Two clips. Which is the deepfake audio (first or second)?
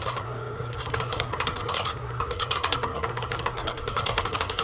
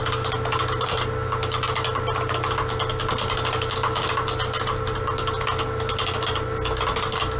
first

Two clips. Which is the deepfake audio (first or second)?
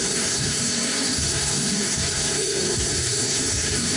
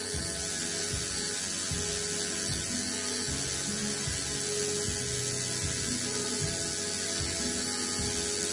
first